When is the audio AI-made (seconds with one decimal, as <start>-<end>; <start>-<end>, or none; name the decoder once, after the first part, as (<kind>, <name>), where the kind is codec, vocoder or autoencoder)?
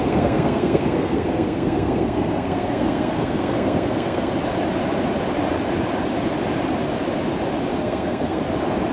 0.0-4.3 (codec, SNAC); 7.7-8.4